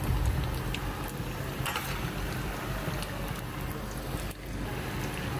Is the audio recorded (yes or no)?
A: yes